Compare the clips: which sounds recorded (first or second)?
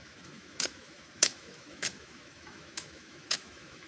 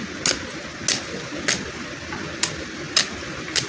second